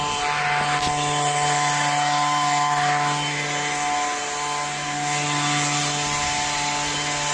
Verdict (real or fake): real